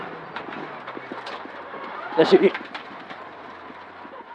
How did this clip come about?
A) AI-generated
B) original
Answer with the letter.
A